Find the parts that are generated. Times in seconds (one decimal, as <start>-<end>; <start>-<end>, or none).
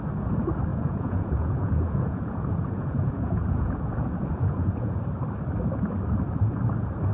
0.7-5.0